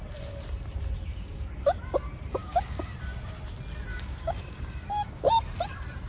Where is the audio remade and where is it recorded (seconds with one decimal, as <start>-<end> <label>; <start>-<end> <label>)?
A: 0.0-1.1 recorded; 1.1-1.6 remade; 1.6-2.4 recorded; 2.4-2.9 remade; 2.9-3.9 recorded; 3.9-5.3 remade; 5.3-6.1 recorded